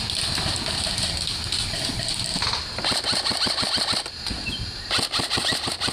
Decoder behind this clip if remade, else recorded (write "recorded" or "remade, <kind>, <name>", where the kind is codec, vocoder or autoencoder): recorded